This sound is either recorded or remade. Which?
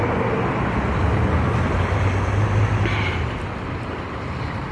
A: recorded